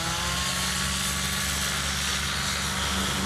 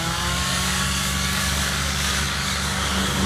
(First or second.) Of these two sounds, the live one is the first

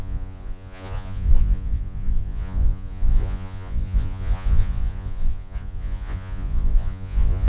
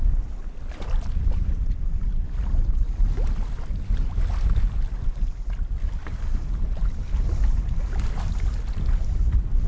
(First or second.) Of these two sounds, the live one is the second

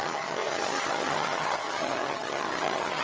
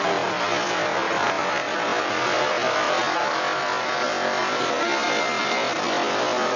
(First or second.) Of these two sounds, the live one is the second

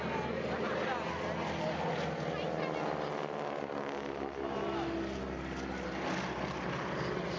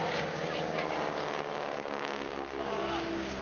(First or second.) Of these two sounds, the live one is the first